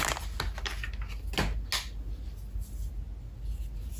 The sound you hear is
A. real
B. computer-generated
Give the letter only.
A